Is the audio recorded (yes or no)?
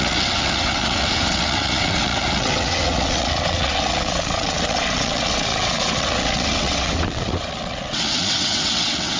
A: no